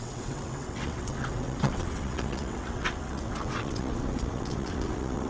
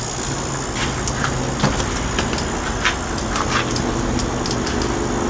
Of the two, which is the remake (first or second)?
first